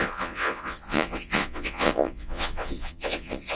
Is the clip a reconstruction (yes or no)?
yes